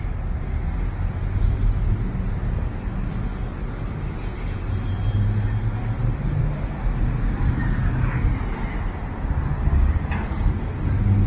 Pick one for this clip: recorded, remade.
recorded